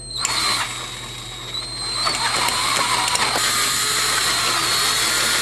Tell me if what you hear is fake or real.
real